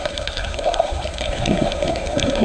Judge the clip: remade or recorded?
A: remade